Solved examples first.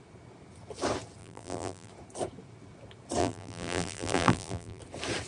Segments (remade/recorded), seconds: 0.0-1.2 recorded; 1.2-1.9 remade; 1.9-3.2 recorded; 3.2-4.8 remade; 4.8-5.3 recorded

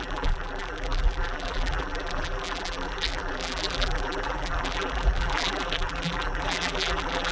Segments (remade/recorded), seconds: 0.0-7.3 remade

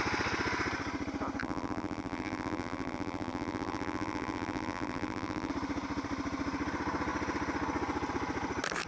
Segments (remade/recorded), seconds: 0.0-1.4 recorded; 1.4-5.5 remade; 5.5-8.9 recorded

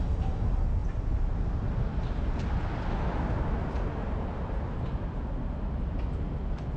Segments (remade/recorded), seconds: 0.0-6.8 recorded